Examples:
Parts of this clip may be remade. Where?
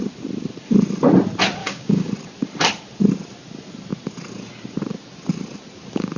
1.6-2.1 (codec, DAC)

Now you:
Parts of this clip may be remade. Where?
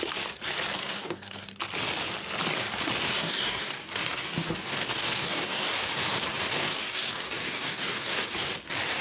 0.8-1.6 (codec, DAC); 3.2-5.9; 6.6-8.5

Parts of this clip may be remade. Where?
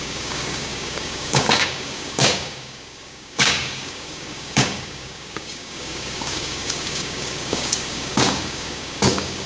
0.0-9.5 (codec, DAC)